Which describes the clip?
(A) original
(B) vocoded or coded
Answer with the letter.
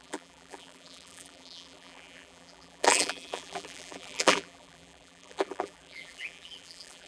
B